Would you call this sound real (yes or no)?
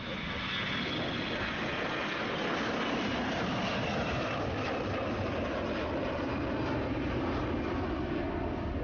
yes